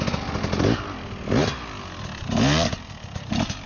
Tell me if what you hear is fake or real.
real